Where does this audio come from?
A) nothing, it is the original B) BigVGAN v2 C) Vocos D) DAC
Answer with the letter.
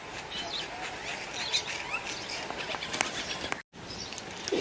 A